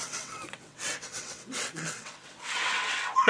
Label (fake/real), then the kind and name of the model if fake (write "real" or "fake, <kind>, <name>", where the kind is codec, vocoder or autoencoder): fake, vocoder, WaveNeXt